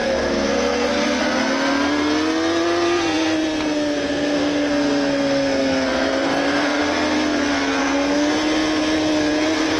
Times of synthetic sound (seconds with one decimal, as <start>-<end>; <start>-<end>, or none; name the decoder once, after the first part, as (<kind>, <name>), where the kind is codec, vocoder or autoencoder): 0.0-1.2 (codec, SNAC); 3.9-6.8; 7.8-8.3